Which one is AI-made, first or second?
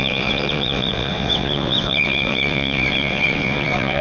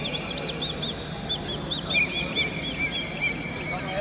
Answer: first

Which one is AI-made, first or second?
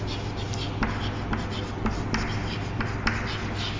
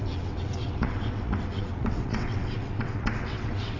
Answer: second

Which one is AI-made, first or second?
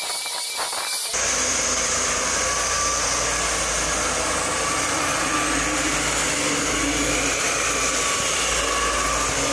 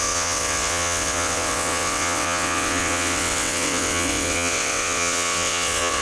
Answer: second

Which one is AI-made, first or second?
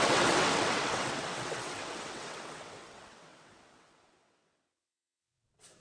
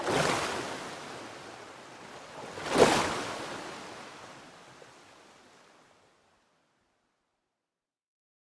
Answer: first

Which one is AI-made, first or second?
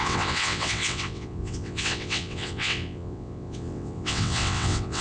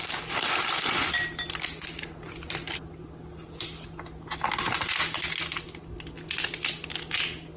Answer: first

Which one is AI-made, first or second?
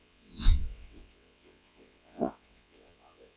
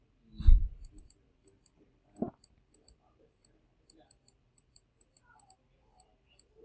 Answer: first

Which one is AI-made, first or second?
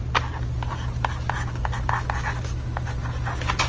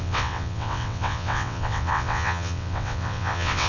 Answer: second